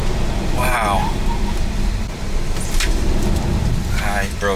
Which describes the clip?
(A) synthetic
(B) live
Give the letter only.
B